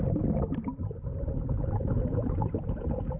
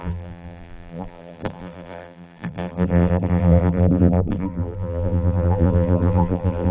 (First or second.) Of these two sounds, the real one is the first